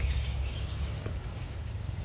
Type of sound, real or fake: fake